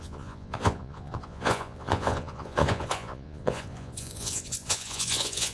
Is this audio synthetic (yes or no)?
yes